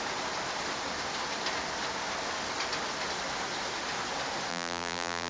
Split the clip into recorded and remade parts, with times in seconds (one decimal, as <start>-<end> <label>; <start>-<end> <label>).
0.0-4.5 recorded; 4.5-5.3 remade